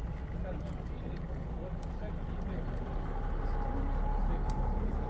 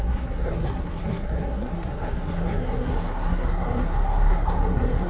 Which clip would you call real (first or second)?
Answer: first